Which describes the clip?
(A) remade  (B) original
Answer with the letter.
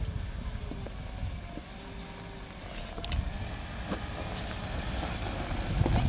B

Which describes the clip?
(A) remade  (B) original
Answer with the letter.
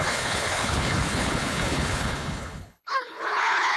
A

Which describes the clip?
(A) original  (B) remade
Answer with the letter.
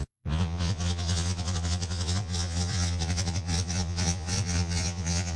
B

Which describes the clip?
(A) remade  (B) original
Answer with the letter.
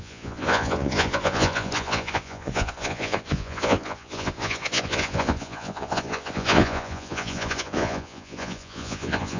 A